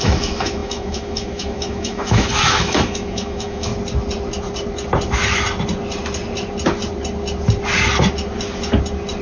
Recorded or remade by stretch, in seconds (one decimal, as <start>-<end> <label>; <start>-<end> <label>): 0.0-3.7 remade; 3.7-9.2 recorded